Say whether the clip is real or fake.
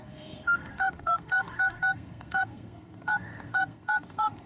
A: fake